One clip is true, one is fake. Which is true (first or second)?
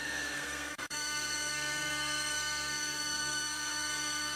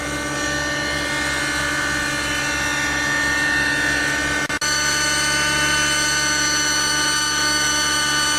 second